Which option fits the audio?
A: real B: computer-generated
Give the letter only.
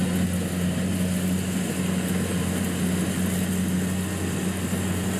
A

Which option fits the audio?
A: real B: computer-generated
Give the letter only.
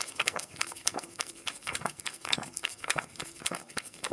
B